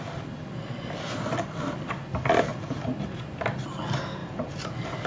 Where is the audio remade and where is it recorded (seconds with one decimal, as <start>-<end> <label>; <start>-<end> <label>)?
0.0-2.5 recorded; 2.5-3.0 remade; 3.0-4.2 recorded; 4.2-5.1 remade